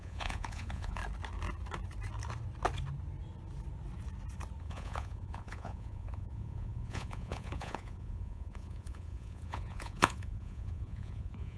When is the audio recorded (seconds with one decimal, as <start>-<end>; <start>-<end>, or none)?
1.0-4.6